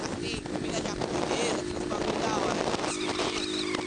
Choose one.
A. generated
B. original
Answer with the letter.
B